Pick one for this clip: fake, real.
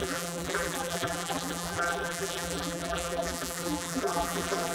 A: fake